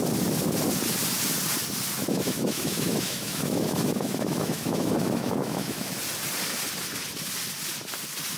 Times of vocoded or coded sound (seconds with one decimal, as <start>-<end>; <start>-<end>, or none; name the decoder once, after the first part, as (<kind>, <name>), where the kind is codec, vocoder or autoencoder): 2.0-6.0 (autoencoder, DAC-VAE)